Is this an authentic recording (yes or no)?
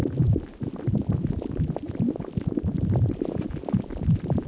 yes